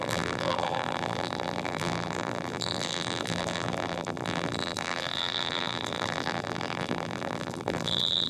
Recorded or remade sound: remade